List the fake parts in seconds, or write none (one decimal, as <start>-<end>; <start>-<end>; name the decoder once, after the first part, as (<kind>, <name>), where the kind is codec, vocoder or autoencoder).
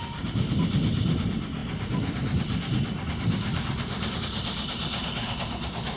none